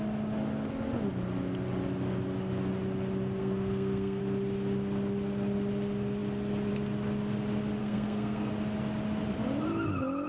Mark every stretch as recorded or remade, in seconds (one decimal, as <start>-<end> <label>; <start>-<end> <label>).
0.0-3.4 recorded; 3.4-4.2 remade; 4.2-7.8 recorded; 7.8-8.5 remade; 8.5-10.3 recorded